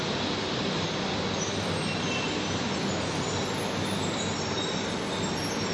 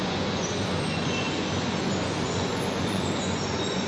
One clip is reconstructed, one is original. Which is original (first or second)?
first